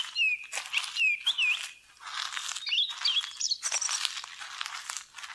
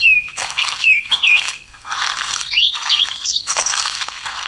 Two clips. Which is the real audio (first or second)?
first